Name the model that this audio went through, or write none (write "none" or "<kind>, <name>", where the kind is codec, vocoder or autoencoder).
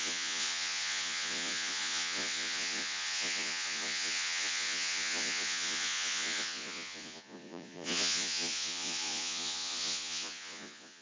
vocoder, Vocos